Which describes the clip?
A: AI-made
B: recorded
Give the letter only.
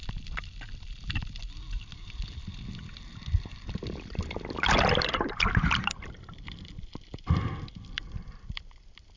A